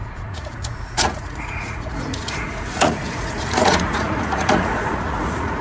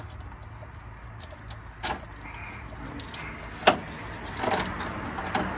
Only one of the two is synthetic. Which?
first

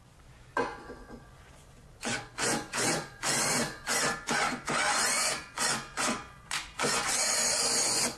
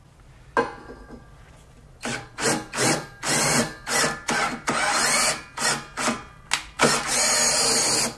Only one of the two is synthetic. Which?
first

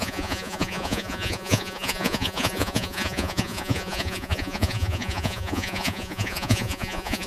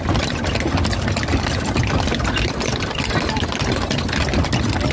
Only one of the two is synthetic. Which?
first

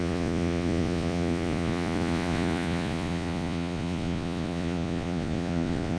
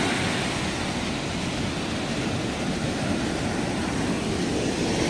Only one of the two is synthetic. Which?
first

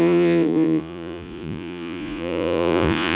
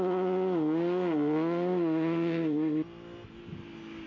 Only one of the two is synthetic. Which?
first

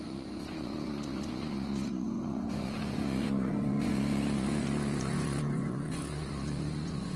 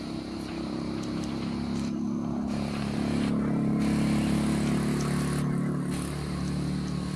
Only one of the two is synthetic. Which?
first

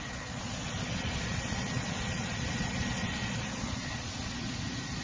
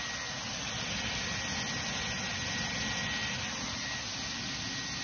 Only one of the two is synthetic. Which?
first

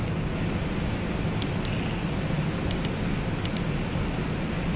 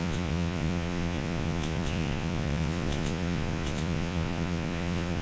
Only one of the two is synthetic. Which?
second